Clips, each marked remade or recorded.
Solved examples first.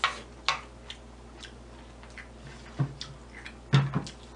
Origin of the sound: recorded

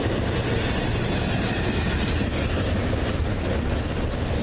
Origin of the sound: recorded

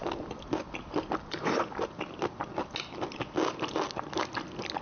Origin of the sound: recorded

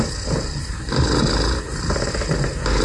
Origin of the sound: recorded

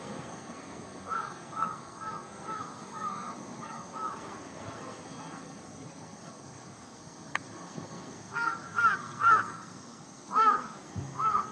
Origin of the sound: remade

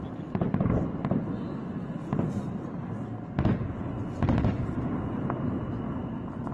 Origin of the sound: recorded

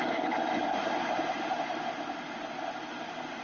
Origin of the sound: recorded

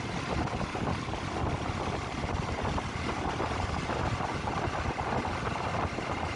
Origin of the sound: remade